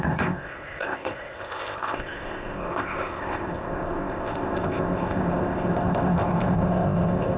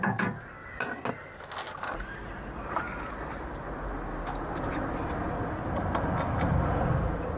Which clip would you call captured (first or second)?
second